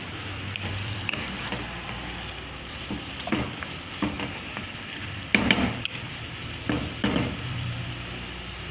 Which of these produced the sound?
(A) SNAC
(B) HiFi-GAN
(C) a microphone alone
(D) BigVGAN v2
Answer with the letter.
D